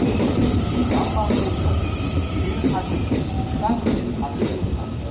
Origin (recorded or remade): recorded